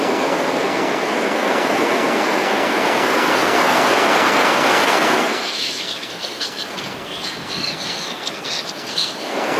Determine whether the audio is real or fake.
fake